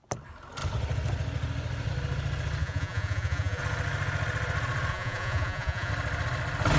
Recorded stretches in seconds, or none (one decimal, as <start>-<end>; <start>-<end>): 0.0-2.6; 3.6-4.9; 5.9-6.8